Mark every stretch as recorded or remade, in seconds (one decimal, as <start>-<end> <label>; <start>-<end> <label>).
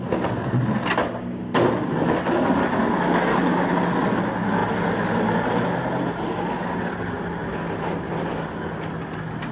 0.0-9.5 recorded